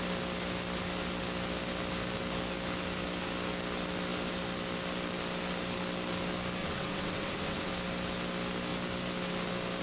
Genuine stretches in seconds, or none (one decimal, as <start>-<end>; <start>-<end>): 0.0-6.6; 7.7-9.8